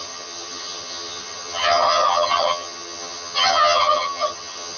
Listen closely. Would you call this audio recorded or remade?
remade